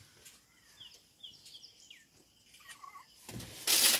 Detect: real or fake real